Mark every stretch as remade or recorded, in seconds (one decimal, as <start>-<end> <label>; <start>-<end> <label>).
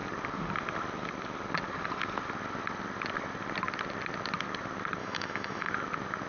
0.0-5.0 recorded; 5.0-5.7 remade; 5.7-6.3 recorded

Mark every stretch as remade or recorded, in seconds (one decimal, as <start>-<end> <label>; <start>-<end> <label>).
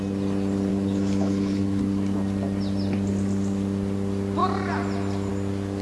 0.0-0.7 recorded; 0.7-1.8 remade; 1.8-5.8 recorded